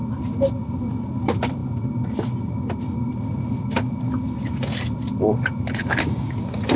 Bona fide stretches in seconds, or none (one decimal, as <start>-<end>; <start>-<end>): 0.0-6.8

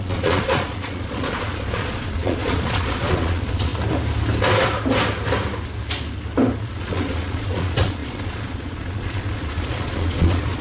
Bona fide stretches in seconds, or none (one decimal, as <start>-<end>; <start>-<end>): 3.7-6.6

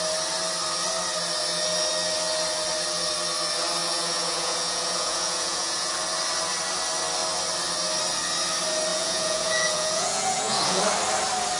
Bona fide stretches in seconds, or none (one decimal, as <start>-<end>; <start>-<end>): 0.0-3.8; 5.9-8.9; 10.8-11.6